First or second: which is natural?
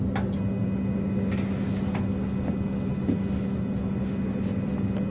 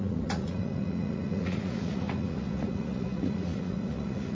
first